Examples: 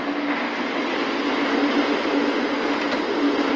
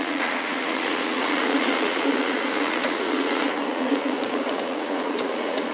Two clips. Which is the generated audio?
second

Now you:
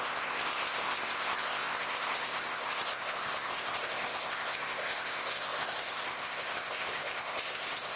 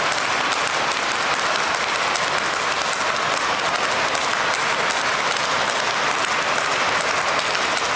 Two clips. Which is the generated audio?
first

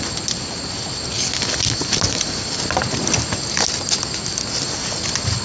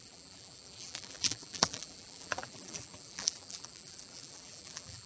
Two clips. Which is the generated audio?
second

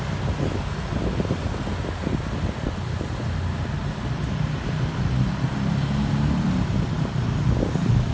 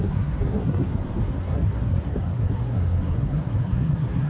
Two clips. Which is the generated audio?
second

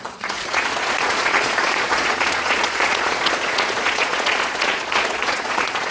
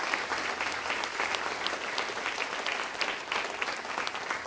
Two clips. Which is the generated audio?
first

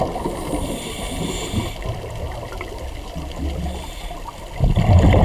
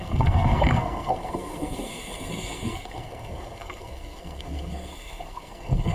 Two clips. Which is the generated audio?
second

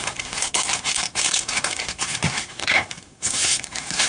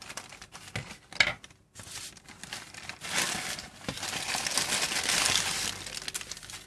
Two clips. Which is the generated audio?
first